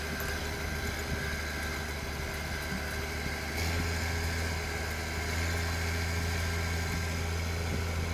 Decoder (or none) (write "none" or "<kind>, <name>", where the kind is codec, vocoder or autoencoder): none